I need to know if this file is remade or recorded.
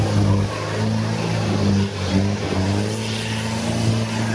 recorded